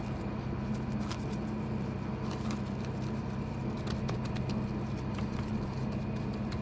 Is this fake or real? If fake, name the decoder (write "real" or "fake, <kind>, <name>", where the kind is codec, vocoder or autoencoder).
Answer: real